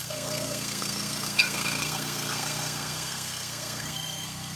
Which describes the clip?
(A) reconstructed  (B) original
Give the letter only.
A